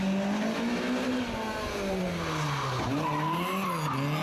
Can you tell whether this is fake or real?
real